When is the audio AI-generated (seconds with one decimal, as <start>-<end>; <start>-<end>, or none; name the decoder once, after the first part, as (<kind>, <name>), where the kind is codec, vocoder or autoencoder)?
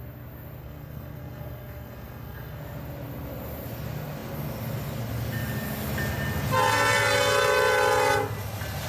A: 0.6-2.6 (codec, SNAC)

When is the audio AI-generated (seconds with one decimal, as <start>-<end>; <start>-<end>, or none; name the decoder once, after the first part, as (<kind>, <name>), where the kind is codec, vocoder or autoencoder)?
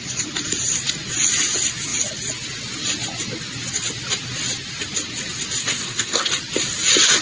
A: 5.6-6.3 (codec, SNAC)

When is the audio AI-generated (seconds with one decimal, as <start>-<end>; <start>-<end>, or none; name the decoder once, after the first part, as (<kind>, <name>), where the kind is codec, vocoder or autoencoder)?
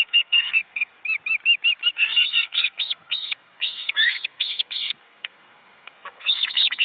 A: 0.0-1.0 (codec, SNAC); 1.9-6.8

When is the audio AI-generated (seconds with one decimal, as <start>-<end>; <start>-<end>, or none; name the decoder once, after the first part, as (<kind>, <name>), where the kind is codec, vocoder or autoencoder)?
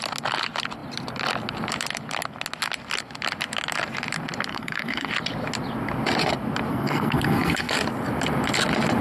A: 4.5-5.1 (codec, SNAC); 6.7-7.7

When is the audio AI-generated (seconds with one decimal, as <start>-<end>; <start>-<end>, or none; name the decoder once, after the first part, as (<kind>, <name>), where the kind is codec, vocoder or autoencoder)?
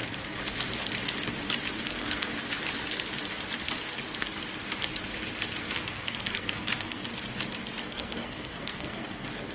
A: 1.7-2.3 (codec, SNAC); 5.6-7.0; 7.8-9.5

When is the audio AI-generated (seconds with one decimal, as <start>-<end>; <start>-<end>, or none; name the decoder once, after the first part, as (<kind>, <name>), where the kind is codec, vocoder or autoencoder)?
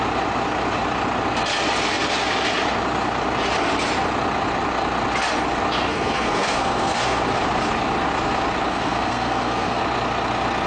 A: 5.9-7.2 (codec, SNAC); 8.7-9.8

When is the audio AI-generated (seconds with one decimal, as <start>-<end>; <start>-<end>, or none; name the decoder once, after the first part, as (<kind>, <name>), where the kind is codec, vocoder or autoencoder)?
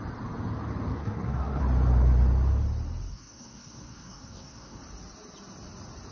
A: 0.9-1.6 (codec, SNAC); 3.1-4.8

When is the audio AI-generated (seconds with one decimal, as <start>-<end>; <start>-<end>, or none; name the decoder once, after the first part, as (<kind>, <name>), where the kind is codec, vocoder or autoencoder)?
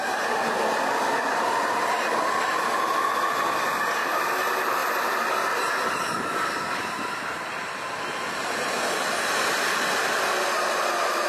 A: none